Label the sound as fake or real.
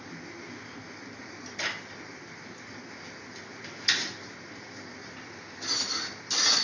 real